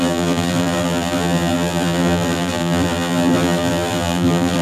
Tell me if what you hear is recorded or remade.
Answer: remade